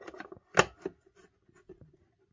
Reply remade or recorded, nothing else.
recorded